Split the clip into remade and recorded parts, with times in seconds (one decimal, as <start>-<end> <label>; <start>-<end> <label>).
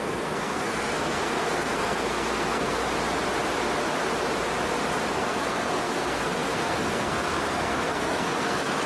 0.0-2.8 remade; 2.8-5.1 recorded; 5.1-8.9 remade